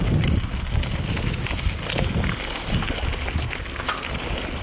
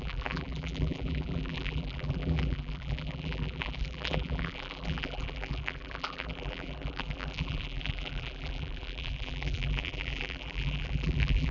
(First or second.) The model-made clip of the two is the second